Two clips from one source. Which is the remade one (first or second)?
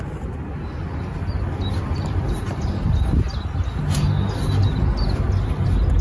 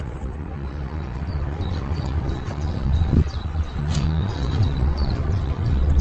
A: second